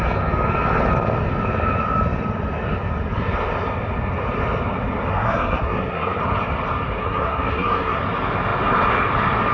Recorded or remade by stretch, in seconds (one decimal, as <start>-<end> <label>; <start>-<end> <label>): 0.0-5.1 recorded; 5.1-6.2 remade; 6.2-7.0 recorded; 7.0-8.0 remade; 8.0-9.5 recorded